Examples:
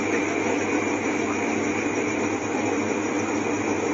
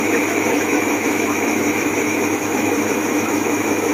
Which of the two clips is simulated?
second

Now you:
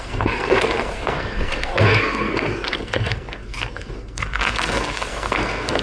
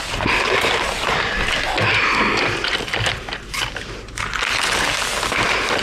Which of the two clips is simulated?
first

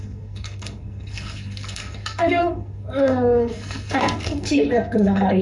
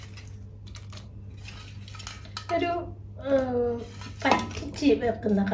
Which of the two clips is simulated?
first